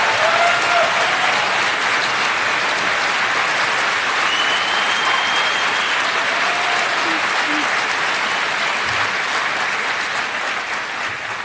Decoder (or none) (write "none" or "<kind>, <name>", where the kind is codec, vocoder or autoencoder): none